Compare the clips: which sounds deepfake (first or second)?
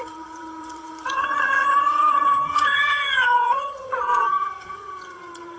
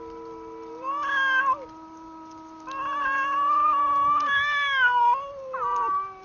first